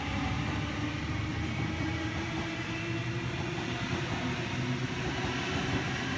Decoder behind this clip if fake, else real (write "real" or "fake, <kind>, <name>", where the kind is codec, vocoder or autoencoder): real